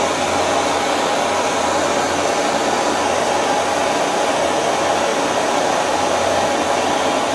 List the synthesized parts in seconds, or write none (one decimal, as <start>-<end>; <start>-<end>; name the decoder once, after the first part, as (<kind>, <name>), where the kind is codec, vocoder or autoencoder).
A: 5.1-6.3 (vocoder, BigVGAN v2)